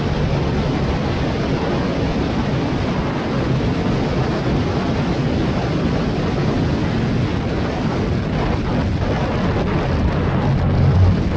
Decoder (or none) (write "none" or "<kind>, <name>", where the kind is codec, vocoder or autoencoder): none